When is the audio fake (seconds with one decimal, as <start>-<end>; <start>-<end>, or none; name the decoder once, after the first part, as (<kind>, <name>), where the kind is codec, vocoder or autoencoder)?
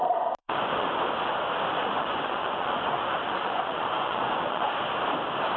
0.4-0.9 (vocoder, Vocos); 1.8-4.7